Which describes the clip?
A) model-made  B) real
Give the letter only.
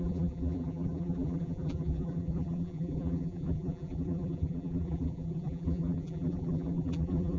A